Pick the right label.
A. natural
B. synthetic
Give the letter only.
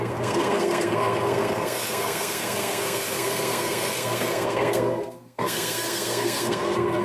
B